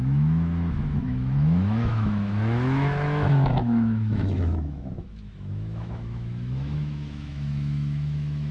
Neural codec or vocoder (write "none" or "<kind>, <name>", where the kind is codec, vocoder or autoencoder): autoencoder, DAC-VAE